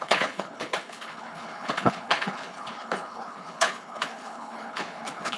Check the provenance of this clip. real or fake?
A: fake